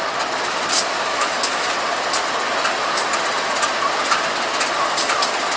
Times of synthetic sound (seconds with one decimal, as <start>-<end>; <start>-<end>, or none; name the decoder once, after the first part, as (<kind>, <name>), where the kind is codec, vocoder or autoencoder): 1.1-1.7 (autoencoder, DAC-VAE)